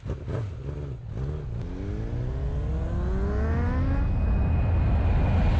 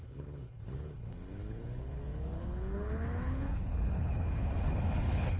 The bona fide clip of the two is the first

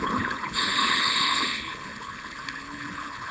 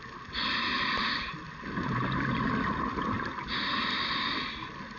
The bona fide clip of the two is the second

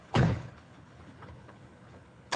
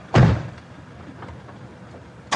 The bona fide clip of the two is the second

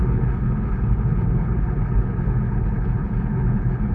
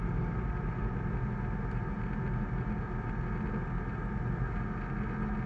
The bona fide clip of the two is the second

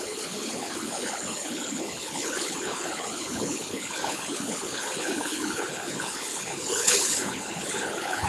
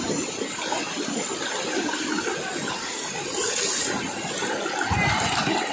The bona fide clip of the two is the second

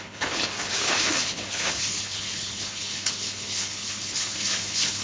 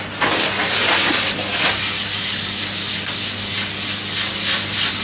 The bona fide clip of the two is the second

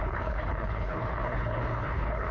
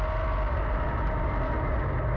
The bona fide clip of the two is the second